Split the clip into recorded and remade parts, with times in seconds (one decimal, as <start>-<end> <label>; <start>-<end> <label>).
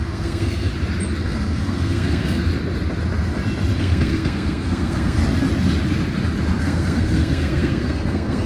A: 0.0-0.7 remade; 0.7-1.2 recorded; 1.2-2.5 remade; 2.5-3.8 recorded; 3.8-5.2 remade; 5.2-6.6 recorded; 6.6-8.5 remade